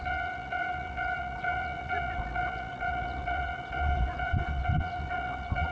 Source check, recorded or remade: remade